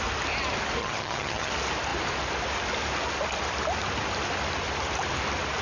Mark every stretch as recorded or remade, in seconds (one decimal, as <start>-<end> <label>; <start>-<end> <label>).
0.0-0.8 recorded; 0.8-1.5 remade; 1.5-5.6 recorded